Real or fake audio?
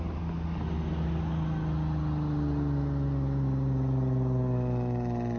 real